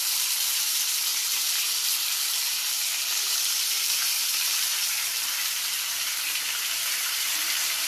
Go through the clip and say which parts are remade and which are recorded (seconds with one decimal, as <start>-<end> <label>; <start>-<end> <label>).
0.0-7.9 remade